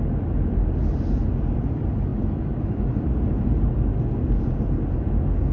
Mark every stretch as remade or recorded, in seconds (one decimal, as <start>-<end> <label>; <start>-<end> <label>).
0.0-5.5 recorded